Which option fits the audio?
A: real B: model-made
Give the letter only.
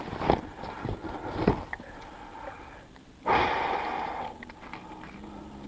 A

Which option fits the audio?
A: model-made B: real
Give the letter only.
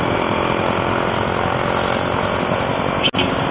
B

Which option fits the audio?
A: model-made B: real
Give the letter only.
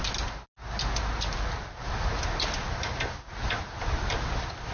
B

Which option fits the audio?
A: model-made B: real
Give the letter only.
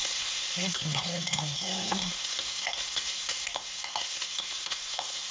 A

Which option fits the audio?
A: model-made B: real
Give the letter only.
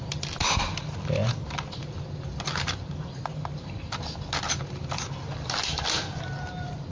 B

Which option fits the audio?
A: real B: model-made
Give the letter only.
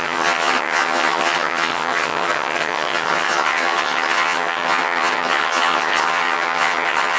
B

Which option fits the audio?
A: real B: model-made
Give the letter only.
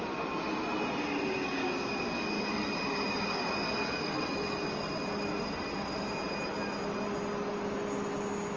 A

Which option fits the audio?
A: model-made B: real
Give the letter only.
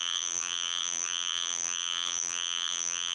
A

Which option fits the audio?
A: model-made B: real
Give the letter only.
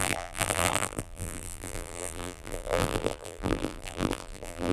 A